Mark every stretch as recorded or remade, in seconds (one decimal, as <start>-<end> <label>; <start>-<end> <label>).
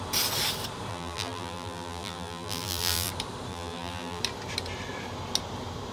0.0-0.9 recorded; 0.9-3.1 remade; 3.1-3.5 recorded; 3.5-4.2 remade; 4.2-5.9 recorded